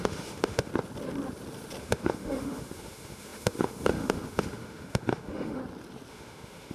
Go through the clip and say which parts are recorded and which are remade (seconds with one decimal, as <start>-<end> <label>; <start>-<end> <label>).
0.0-0.7 remade; 0.7-1.8 recorded; 1.8-5.6 remade; 5.6-6.1 recorded; 6.1-6.7 remade